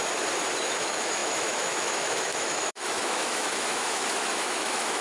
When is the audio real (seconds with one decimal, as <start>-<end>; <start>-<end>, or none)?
0.0-0.6